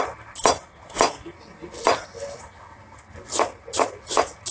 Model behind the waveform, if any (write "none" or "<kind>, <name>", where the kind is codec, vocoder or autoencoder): none